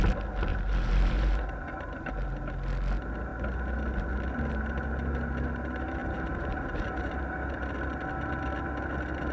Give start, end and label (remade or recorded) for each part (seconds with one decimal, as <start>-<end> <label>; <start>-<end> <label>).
0.0-0.5 recorded; 0.5-2.1 remade; 2.1-6.0 recorded; 6.0-7.1 remade; 7.1-9.3 recorded